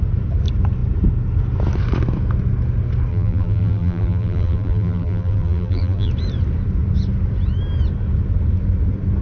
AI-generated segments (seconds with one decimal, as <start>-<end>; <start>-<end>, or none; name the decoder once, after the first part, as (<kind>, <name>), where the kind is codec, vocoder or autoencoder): 3.1-6.1 (vocoder, BigVGAN v2)